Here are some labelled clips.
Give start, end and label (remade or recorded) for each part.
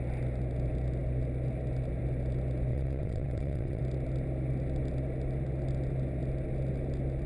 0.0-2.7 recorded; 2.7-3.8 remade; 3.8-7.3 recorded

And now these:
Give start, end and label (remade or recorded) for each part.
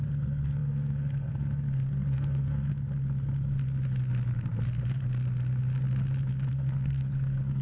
0.0-2.7 remade; 2.7-6.5 recorded; 6.5-7.6 remade